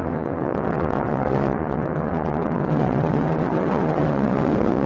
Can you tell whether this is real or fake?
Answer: fake